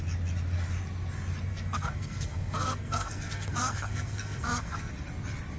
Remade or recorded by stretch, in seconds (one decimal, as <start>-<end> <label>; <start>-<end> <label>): 0.0-1.5 recorded; 1.5-4.9 remade; 4.9-5.6 recorded